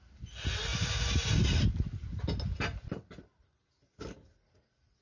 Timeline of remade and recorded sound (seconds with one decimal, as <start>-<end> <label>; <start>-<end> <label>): 0.0-5.0 recorded

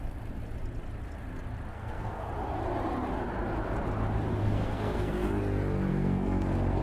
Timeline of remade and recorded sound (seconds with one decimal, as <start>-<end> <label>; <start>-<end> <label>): 0.0-1.7 recorded; 1.7-2.3 remade; 2.3-4.4 recorded; 4.4-5.4 remade; 5.4-5.9 recorded; 5.9-6.8 remade

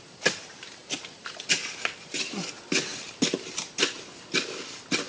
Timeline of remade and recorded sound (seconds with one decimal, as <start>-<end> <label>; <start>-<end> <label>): 0.0-5.1 recorded

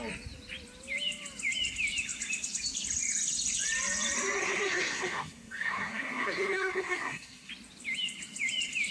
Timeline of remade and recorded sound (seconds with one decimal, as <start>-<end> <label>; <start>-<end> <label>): 0.0-4.4 recorded; 4.4-7.5 remade; 7.5-8.9 recorded

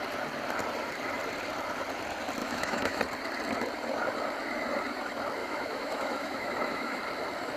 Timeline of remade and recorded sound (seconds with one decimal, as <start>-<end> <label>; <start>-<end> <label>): 0.0-2.4 recorded; 2.4-3.0 remade; 3.0-5.4 recorded; 5.4-7.0 remade; 7.0-7.6 recorded

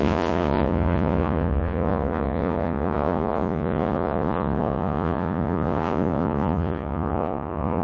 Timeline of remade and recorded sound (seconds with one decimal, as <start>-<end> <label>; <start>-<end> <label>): 0.0-7.8 remade

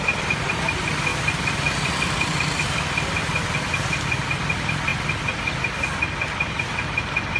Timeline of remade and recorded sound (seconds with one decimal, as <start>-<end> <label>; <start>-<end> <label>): 0.0-7.4 recorded

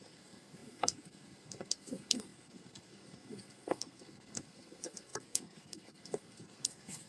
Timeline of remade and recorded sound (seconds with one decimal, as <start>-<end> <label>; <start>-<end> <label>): 0.0-7.1 remade